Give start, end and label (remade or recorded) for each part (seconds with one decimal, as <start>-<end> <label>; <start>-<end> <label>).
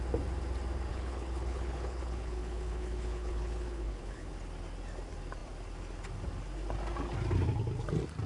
0.0-0.9 recorded; 0.9-4.3 remade; 4.3-8.3 recorded